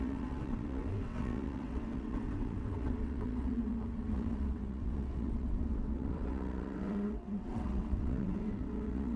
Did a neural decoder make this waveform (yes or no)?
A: yes